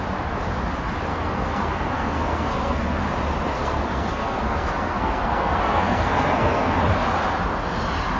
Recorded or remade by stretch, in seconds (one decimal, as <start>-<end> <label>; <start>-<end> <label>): 0.0-1.1 recorded; 1.1-3.0 remade; 3.0-3.5 recorded; 3.5-6.8 remade; 6.8-8.2 recorded